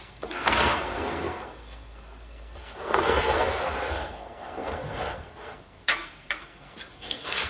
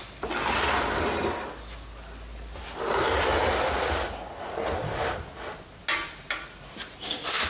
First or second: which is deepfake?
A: first